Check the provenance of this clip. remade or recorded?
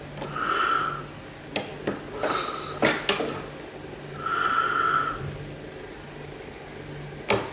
recorded